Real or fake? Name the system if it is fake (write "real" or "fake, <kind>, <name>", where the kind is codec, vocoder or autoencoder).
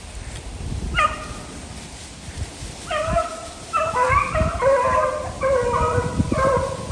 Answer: fake, vocoder, BigVGAN v2